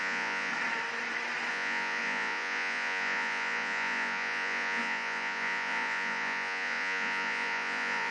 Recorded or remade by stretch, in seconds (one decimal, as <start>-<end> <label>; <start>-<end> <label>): 0.0-0.5 remade; 0.5-1.5 recorded; 1.5-8.1 remade